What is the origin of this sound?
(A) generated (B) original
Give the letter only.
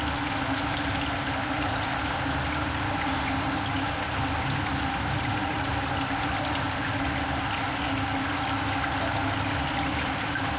B